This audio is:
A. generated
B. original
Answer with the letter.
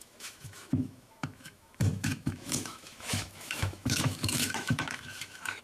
A